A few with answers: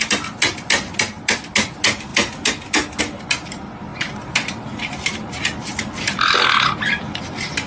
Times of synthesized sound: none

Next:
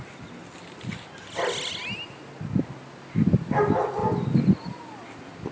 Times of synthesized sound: none

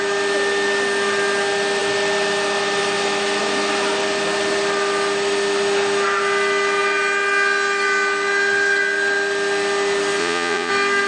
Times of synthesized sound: 10.2-10.7 (vocoder, Vocos)

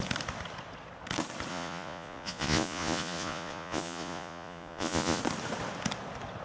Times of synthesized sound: 1.5-5.2 (vocoder, Vocos)

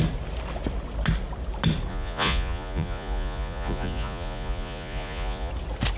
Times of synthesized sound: 1.9-5.5 (vocoder, Vocos)

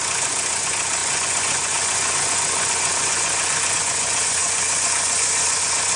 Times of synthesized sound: 0.0-6.0 (vocoder, Vocos)

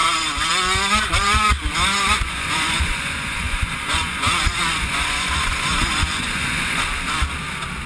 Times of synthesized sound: 0.0-1.5 (vocoder, Vocos); 2.1-6.8

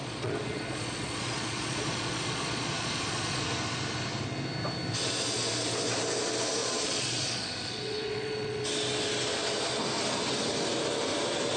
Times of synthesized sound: 0.0-3.4 (vocoder, Vocos); 6.6-8.6